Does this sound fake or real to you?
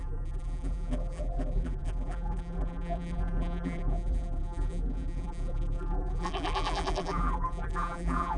fake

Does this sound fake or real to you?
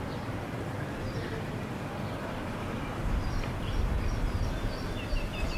fake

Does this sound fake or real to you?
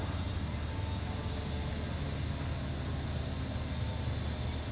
real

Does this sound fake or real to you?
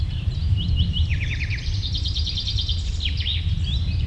fake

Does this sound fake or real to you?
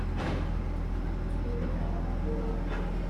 real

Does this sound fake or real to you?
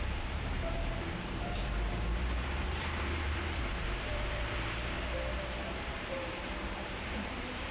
fake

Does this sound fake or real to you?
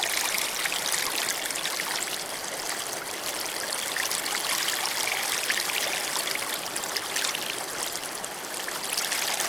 fake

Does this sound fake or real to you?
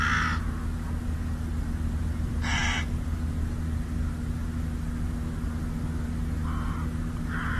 real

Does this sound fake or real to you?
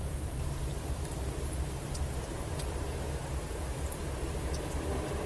fake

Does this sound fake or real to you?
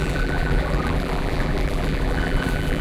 fake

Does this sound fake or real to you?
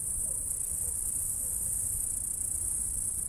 fake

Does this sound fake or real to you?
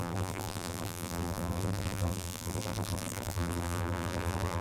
fake